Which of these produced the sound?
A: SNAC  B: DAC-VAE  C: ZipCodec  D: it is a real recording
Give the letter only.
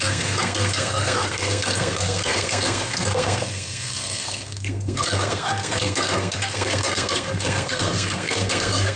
A